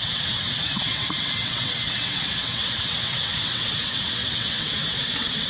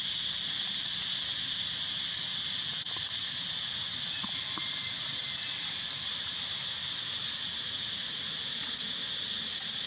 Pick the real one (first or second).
second